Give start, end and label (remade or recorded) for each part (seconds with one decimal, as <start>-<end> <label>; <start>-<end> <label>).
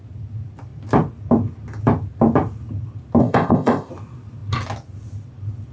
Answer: 0.0-3.2 recorded; 3.2-3.9 remade; 3.9-5.7 recorded